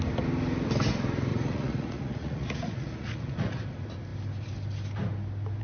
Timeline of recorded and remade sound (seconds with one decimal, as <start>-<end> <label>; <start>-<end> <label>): 0.0-1.3 recorded; 1.3-3.6 remade; 3.6-5.6 recorded